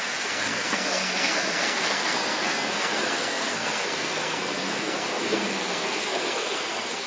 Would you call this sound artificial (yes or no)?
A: yes